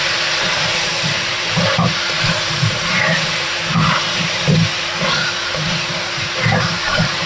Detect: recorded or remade remade